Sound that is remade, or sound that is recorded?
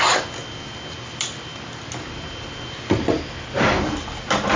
recorded